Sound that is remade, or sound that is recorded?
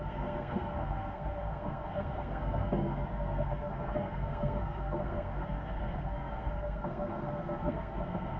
remade